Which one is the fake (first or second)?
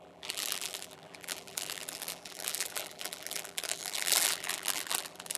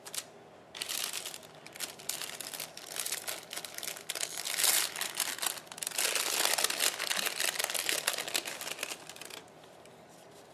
first